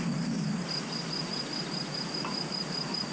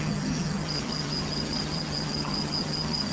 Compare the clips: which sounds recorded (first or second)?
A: first